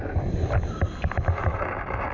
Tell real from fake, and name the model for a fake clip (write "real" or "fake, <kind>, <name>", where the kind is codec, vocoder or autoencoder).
real